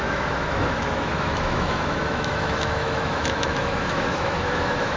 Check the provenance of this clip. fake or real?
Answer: fake